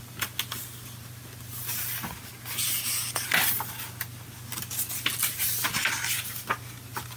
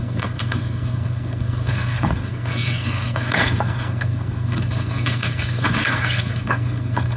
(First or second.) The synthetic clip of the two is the second